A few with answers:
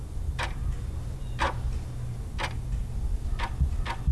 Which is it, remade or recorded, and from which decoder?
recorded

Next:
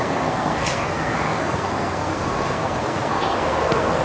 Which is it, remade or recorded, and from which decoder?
remade, codec, SNAC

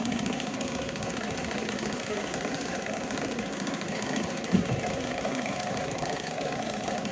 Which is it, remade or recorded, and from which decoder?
remade, codec, SNAC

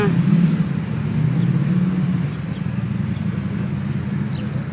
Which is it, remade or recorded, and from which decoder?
recorded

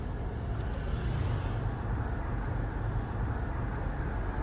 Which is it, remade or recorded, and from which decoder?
recorded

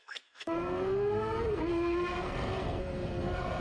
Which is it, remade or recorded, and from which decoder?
remade, codec, SNAC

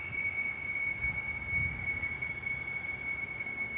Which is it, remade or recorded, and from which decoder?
recorded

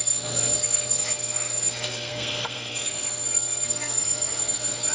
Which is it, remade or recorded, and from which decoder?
remade, codec, SNAC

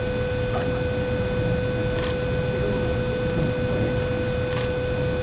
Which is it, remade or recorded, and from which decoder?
recorded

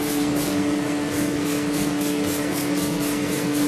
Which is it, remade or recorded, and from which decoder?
remade, codec, SNAC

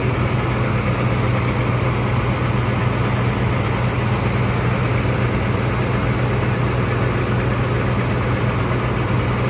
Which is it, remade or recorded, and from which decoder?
recorded